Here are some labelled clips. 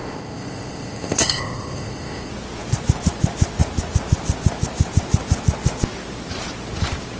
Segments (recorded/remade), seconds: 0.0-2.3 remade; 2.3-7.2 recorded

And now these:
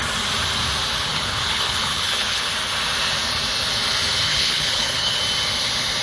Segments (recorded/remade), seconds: 0.0-1.1 recorded; 1.1-2.5 remade; 2.5-4.3 recorded; 4.3-5.2 remade; 5.2-6.0 recorded

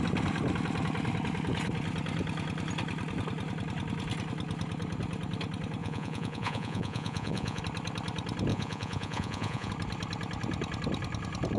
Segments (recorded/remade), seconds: 0.0-5.8 recorded; 5.8-7.6 remade; 7.6-8.5 recorded; 8.5-9.7 remade; 9.7-11.6 recorded

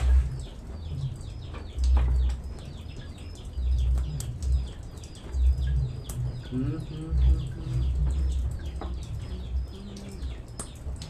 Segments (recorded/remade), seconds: 0.0-8.0 recorded; 8.0-9.2 remade; 9.2-11.1 recorded